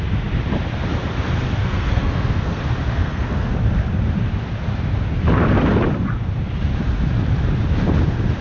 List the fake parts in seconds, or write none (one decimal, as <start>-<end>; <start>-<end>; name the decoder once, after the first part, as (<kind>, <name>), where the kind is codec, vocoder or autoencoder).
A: 1.6-2.6 (codec, SNAC); 3.0-3.5